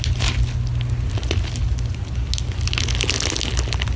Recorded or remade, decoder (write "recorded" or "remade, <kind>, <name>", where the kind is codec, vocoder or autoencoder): recorded